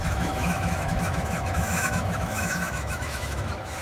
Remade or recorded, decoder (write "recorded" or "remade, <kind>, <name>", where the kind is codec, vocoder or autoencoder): remade, autoencoder, DAC-VAE